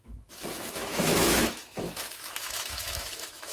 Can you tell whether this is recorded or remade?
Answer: remade